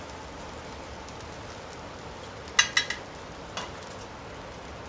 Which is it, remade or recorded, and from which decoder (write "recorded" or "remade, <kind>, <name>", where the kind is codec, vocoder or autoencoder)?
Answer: recorded